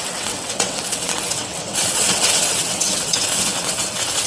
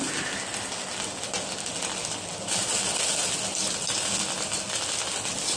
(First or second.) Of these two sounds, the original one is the second